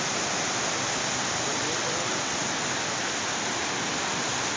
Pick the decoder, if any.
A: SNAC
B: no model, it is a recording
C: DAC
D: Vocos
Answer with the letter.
B